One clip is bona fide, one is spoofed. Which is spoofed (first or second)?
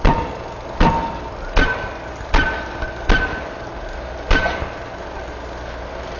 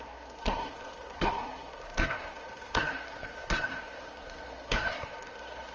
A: second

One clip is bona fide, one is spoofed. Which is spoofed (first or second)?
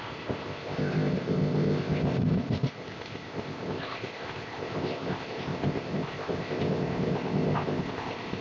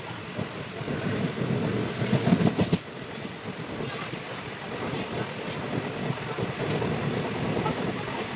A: first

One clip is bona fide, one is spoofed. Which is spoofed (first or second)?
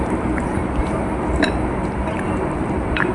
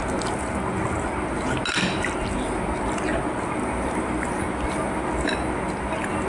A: first